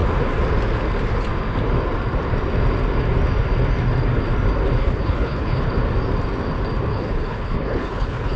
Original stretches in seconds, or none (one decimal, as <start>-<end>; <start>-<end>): 0.0-4.8; 5.6-6.9